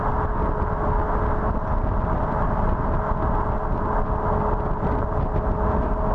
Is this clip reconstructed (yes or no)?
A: no